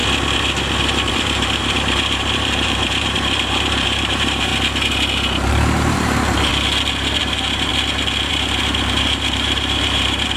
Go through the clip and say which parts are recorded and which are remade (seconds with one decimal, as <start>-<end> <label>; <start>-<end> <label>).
0.0-1.1 recorded; 1.1-4.5 remade; 4.5-5.5 recorded; 5.5-6.5 remade; 6.5-7.2 recorded; 7.2-7.7 remade; 7.7-8.3 recorded; 8.3-10.4 remade